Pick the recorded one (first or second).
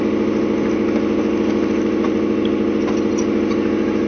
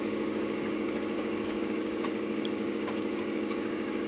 first